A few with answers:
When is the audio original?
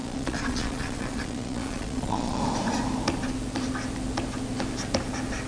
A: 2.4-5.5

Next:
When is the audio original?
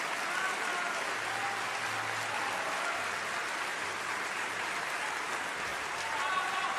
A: 0.0-3.7; 4.7-6.8